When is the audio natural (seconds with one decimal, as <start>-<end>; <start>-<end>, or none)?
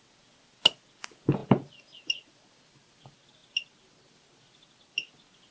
0.0-5.5